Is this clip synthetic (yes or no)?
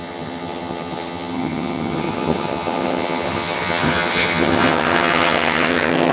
yes